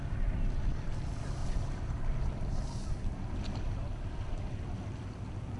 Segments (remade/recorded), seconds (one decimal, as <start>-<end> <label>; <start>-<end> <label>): 0.0-1.4 recorded; 1.4-2.0 remade; 2.0-5.6 recorded

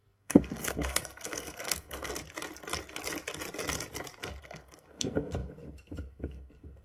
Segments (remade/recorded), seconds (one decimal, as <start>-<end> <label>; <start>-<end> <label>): 0.0-2.1 remade; 2.1-4.4 recorded; 4.4-6.8 remade

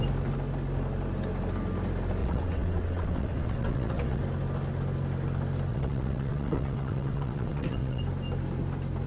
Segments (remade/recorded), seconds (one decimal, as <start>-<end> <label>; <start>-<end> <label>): 0.0-2.2 recorded; 2.2-4.2 remade; 4.2-5.7 recorded; 5.7-8.0 remade; 8.0-9.1 recorded